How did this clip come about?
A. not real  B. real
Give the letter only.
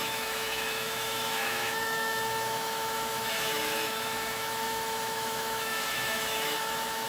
A